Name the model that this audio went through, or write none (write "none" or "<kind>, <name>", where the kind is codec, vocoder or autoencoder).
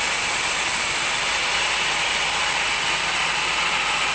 none